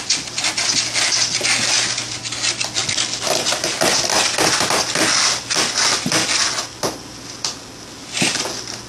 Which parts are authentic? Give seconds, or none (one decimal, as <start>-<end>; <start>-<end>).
0.0-8.9